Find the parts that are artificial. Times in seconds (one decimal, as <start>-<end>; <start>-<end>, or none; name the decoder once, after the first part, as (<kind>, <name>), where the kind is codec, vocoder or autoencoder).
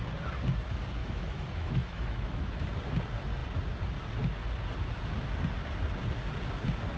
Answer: 1.0-2.6 (autoencoder, DAC-VAE)